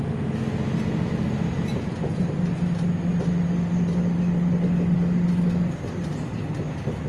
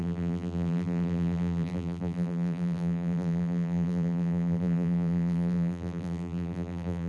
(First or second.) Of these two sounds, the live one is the first